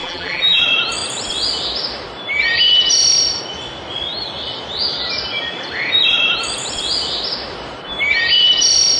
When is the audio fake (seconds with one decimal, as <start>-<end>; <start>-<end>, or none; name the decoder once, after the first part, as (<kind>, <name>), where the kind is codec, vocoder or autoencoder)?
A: 0.0-0.6 (vocoder, BigVGAN v2)